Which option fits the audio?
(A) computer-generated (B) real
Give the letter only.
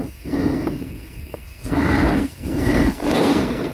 A